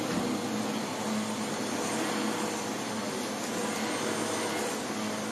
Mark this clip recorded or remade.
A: recorded